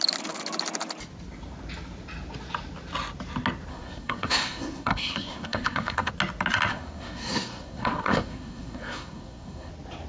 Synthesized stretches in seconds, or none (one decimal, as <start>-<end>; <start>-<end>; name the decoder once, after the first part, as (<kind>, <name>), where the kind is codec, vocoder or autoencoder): 3.7-6.1 (codec, SNAC); 6.7-9.7